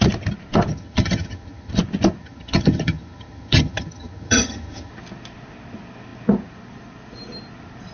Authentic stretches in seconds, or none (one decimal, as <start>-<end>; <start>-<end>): 0.0-0.7; 1.7-2.2; 4.9-7.9